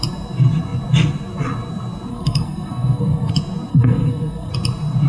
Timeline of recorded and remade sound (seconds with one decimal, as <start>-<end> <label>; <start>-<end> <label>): 0.0-2.1 recorded; 2.1-3.3 remade; 3.3-3.7 recorded; 3.7-4.5 remade; 4.5-5.1 recorded